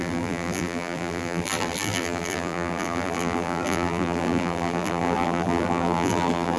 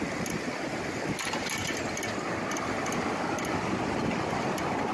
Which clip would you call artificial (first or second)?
first